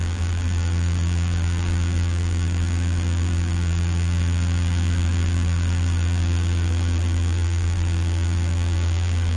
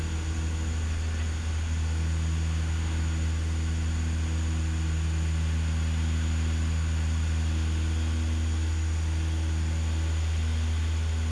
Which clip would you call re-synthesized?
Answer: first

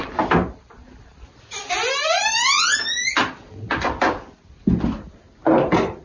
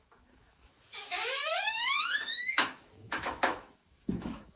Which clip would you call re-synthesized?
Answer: second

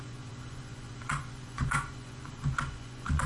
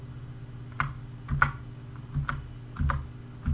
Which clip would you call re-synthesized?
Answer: first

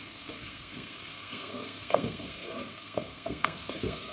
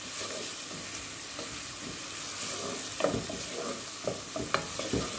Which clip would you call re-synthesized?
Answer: first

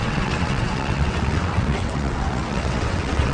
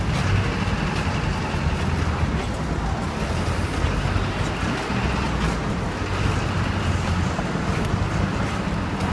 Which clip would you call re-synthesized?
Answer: first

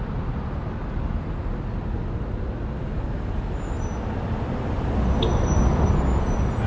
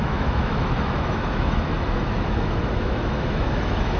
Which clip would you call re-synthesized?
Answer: second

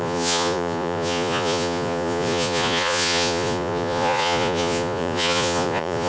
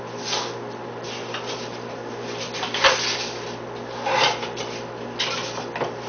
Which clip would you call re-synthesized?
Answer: first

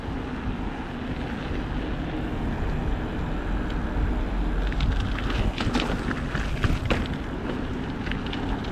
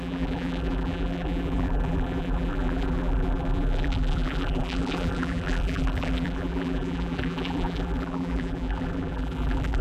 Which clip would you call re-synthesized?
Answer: second